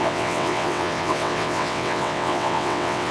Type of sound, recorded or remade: remade